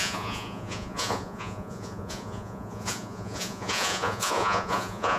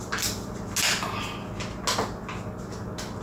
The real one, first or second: second